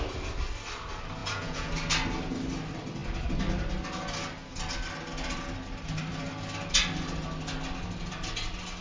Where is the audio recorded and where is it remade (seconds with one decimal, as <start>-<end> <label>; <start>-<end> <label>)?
0.0-1.2 recorded; 1.2-1.7 remade; 1.7-8.8 recorded